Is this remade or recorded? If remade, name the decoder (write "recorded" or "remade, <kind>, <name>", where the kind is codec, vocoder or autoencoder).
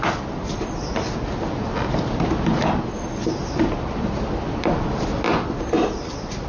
recorded